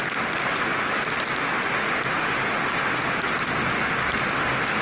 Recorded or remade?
recorded